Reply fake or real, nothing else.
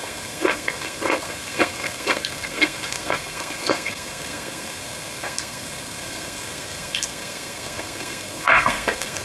fake